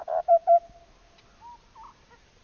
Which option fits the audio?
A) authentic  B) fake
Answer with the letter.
A